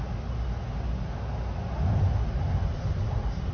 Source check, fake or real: real